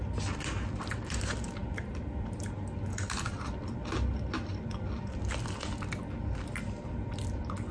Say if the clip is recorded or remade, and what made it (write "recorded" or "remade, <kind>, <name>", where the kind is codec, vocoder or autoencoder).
recorded